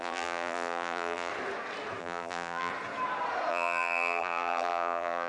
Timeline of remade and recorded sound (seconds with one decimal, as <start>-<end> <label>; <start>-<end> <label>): 0.0-1.3 remade; 1.3-2.0 recorded; 2.0-2.7 remade; 2.7-3.5 recorded; 3.5-5.3 remade